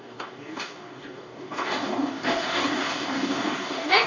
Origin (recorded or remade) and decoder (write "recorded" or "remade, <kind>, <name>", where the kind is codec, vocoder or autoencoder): remade, codec, DAC